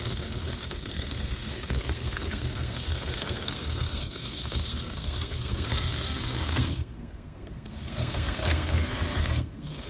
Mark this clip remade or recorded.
remade